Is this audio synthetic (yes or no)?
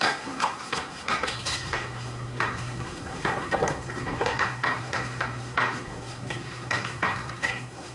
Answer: yes